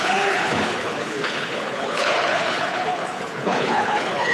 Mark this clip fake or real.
fake